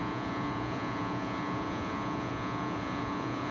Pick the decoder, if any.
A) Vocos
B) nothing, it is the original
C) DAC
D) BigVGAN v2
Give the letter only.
A